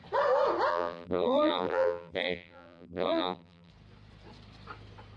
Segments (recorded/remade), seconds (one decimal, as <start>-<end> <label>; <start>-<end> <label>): 0.0-0.7 recorded; 0.7-3.7 remade; 3.7-5.2 recorded